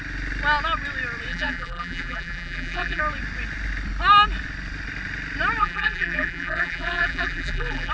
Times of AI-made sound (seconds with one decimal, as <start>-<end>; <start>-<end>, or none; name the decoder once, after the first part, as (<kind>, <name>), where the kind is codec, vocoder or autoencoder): 1.3-3.0 (vocoder, BigVGAN v2); 5.6-7.9